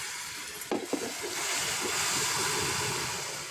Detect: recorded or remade recorded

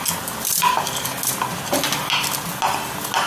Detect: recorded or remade recorded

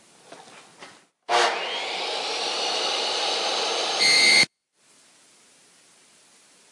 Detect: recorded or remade recorded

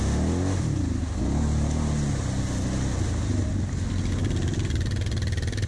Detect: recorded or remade recorded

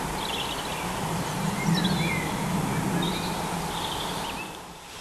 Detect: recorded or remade recorded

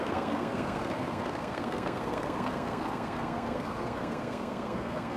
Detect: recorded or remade remade